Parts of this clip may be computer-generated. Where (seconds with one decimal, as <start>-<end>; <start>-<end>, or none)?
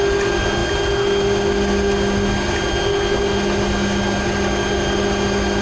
none